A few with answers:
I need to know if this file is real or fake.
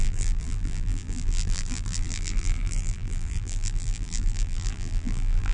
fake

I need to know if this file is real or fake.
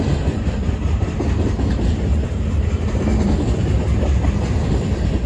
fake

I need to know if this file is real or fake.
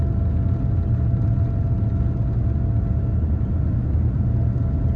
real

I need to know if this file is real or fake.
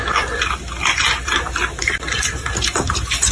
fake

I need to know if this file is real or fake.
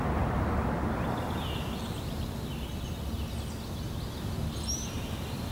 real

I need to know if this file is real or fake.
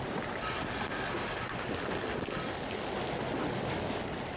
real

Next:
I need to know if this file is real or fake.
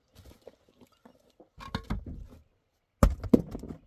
real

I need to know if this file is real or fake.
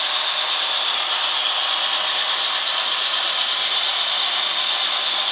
real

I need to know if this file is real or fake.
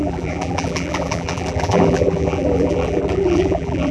fake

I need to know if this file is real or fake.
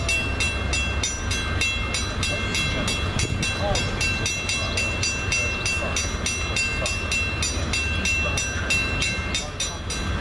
real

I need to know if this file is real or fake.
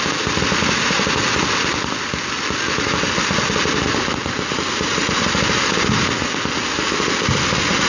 real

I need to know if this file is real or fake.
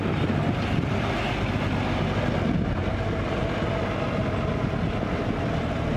real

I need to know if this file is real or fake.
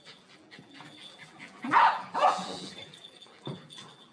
fake